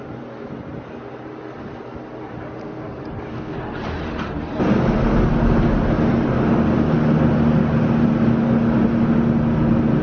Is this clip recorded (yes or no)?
yes